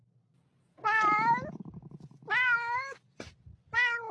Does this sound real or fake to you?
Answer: real